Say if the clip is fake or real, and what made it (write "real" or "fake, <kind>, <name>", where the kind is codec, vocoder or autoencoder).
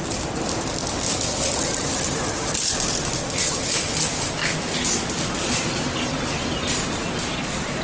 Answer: real